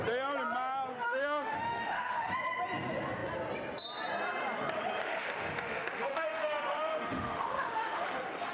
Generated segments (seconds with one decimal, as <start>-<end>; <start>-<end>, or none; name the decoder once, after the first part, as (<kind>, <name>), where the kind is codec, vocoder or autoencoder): 0.9-2.3 (autoencoder, DAC-VAE); 5.0-8.5